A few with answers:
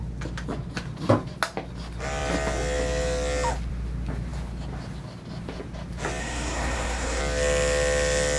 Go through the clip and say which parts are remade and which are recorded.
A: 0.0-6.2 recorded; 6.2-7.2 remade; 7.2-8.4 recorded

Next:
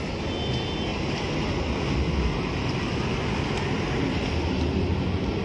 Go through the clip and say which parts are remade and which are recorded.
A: 0.0-5.4 recorded

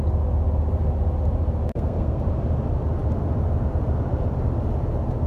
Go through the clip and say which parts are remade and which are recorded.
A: 0.0-1.7 recorded; 1.7-2.2 remade; 2.2-5.3 recorded

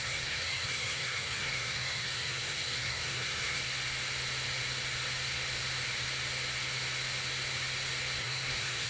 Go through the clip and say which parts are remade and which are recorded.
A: 0.0-3.6 remade; 3.6-8.2 recorded; 8.2-8.9 remade